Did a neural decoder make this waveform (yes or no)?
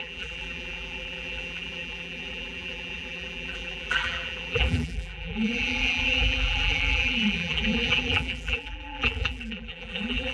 yes